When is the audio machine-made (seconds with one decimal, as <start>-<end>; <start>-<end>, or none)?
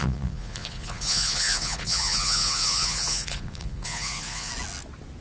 0.0-4.5